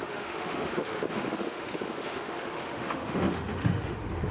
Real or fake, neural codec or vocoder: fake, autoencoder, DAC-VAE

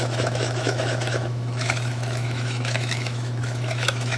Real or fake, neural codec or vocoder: fake, autoencoder, DAC-VAE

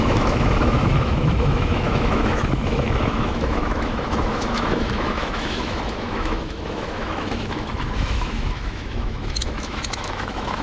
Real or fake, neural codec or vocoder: fake, autoencoder, DAC-VAE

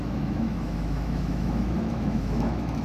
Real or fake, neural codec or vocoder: fake, autoencoder, DAC-VAE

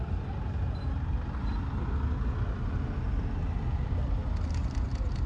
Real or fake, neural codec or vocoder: real